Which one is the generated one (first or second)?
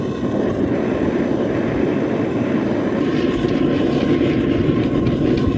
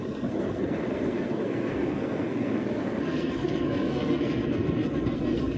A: second